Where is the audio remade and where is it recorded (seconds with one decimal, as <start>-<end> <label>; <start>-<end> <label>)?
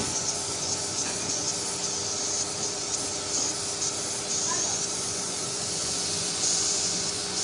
0.0-1.5 remade; 1.5-4.5 recorded; 4.5-7.4 remade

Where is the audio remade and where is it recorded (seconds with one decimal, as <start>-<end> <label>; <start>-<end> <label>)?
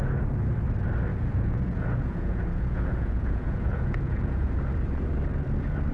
0.0-1.1 recorded; 1.1-4.6 remade; 4.6-5.9 recorded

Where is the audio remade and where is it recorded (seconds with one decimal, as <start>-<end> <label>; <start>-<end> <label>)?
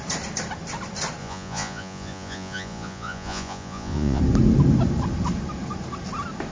0.0-1.2 recorded; 1.2-4.2 remade; 4.2-6.5 recorded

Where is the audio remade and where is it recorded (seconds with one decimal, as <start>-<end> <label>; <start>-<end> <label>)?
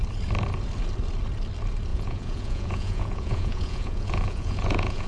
0.0-1.9 recorded; 1.9-5.1 remade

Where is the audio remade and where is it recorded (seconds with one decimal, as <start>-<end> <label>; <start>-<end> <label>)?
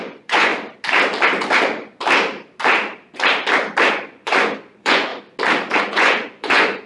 0.0-0.5 remade; 0.5-3.9 recorded; 3.9-5.1 remade; 5.1-5.8 recorded; 5.8-6.9 remade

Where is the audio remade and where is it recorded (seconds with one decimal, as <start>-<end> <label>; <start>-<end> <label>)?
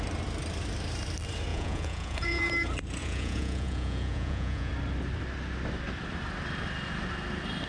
0.0-1.5 recorded; 1.5-2.4 remade; 2.4-3.0 recorded; 3.0-4.7 remade; 4.7-7.7 recorded